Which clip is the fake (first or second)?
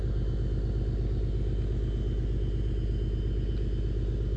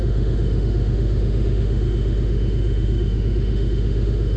second